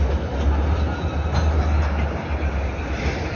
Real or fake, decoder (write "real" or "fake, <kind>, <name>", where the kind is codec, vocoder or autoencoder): real